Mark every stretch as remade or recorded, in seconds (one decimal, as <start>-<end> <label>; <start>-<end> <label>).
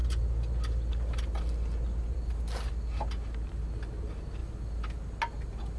0.0-5.8 recorded